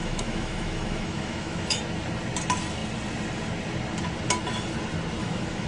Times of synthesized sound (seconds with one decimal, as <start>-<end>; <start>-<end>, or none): 0.0-1.8; 5.2-5.7